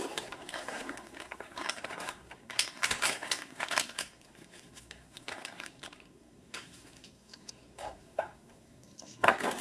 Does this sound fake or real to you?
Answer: fake